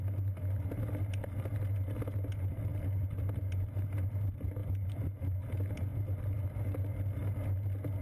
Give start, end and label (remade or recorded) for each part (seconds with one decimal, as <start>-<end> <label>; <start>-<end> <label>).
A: 0.0-8.0 recorded